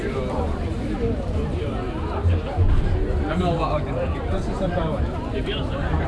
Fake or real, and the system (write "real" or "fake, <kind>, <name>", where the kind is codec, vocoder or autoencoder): fake, vocoder, BigVGAN v2